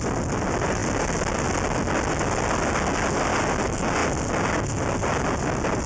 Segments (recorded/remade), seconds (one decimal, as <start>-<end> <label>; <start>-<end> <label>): 0.0-5.9 recorded